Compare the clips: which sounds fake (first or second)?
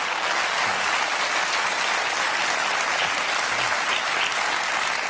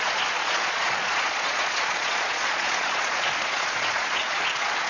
second